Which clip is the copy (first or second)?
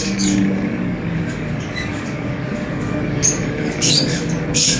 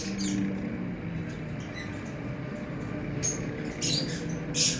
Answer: first